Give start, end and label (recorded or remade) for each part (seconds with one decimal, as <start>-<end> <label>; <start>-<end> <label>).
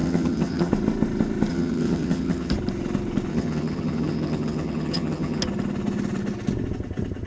0.0-0.7 remade; 0.7-1.5 recorded; 1.5-2.5 remade; 2.5-3.3 recorded; 3.3-5.4 remade; 5.4-7.3 recorded